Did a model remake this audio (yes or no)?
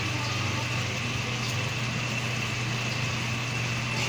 no